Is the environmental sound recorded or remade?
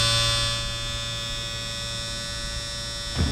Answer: recorded